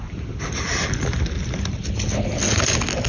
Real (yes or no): yes